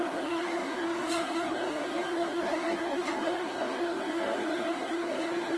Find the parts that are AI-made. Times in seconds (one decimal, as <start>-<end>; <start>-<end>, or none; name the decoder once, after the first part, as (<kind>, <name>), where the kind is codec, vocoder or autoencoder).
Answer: 0.0-5.6 (codec, SNAC)